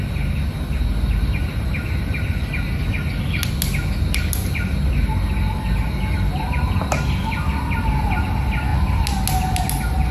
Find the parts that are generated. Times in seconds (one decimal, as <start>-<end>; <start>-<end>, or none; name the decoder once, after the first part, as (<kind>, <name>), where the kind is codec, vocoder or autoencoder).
none